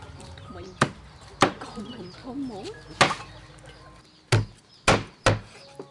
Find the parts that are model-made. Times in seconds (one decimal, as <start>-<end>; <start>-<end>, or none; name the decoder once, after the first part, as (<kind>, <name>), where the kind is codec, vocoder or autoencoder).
0.0-2.2 (vocoder, BigVGAN v2)